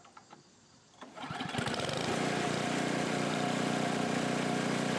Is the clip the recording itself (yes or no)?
no